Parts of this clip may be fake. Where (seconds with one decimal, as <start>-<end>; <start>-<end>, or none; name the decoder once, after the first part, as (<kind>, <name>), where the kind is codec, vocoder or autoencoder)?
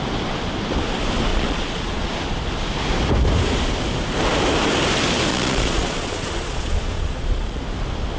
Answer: 1.3-2.1 (vocoder, Vocos); 5.3-7.6